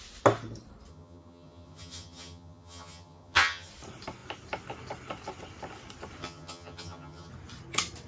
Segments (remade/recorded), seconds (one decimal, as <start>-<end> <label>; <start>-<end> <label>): 0.0-0.9 recorded; 0.9-3.7 remade; 3.7-6.2 recorded; 6.2-7.3 remade; 7.3-8.1 recorded